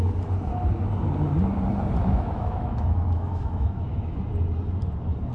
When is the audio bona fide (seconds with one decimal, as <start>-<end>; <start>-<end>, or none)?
0.0-2.0; 4.2-5.3